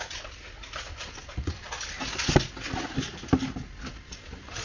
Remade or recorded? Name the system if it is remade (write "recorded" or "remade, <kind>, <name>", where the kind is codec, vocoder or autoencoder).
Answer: recorded